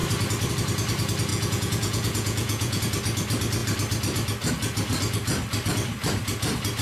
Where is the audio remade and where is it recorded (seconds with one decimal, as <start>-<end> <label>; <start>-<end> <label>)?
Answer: 0.0-1.3 recorded; 1.3-2.8 remade; 2.8-6.8 recorded

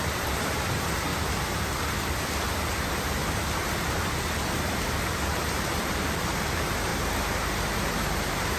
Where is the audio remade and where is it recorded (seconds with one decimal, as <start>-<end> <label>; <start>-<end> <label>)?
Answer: 0.0-1.1 remade; 1.1-5.1 recorded; 5.1-6.9 remade; 6.9-7.8 recorded; 7.8-8.6 remade

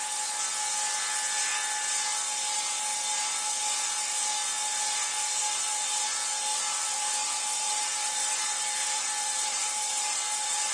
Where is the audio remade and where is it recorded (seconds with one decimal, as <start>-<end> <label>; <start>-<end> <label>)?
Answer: 0.0-6.5 recorded; 6.5-10.7 remade

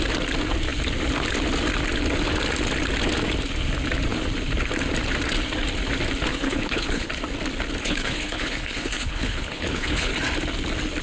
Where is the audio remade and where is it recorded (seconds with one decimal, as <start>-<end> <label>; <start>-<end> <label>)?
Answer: 0.0-6.3 recorded; 6.3-7.1 remade; 7.1-7.8 recorded; 7.8-10.1 remade; 10.1-11.0 recorded